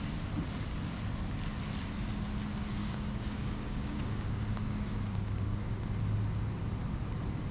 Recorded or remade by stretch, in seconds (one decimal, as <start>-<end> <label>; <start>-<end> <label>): 0.0-2.8 recorded; 2.8-5.9 remade; 5.9-7.5 recorded